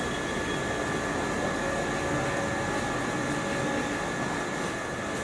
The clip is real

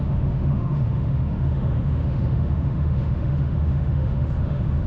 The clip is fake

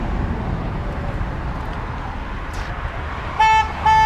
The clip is real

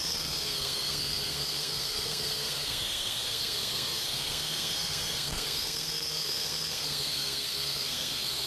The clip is fake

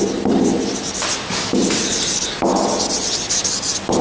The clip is real